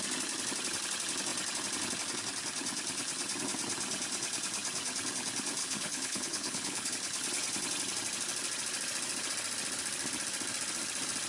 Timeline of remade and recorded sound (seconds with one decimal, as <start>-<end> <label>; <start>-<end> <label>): 0.0-5.6 recorded; 5.6-6.9 remade; 6.9-11.3 recorded